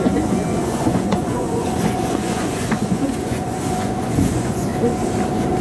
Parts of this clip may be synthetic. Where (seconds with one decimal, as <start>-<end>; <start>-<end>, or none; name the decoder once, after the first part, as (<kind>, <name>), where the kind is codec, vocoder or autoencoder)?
0.0-4.7 (vocoder, Vocos)